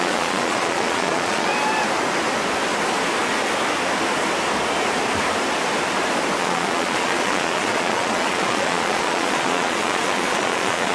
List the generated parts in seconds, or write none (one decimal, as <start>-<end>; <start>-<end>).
0.0-1.5; 6.4-10.9